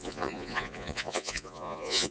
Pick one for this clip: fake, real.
fake